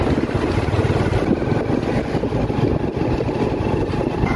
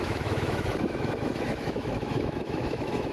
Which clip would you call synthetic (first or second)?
second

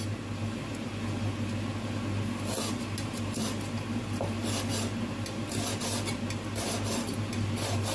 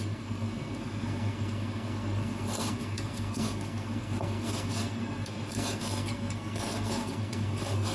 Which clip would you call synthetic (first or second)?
second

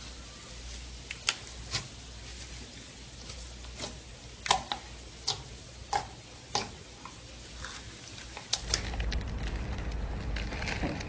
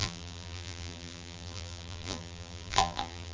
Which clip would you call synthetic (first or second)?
second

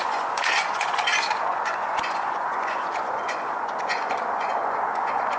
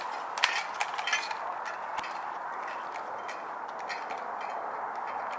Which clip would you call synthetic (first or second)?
first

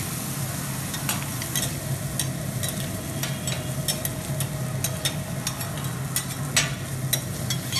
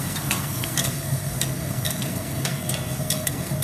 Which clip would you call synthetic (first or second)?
second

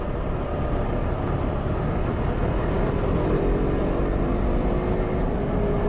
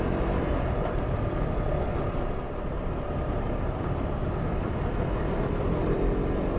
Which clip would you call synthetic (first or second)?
second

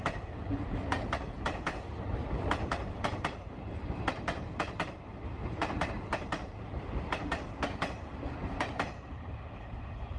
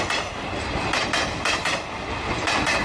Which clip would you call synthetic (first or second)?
first